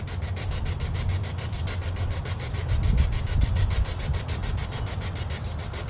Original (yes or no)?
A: no